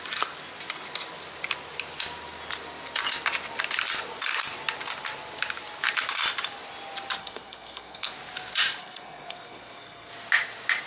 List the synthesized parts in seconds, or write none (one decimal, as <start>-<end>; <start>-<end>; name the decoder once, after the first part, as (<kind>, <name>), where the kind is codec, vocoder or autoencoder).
7.2-8.1 (codec, SNAC); 8.8-10.1